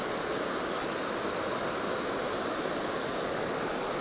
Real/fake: real